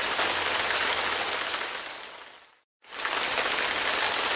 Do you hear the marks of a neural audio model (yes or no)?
no